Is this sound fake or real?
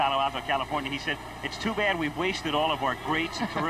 real